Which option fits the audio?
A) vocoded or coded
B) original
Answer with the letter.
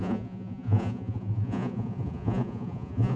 A